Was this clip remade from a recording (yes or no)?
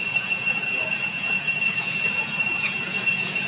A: yes